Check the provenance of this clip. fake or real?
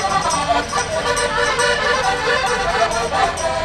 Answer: real